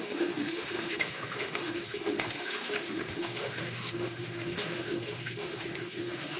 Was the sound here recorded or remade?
remade